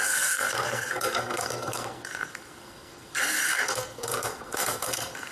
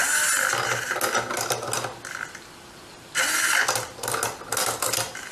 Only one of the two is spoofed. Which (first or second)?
first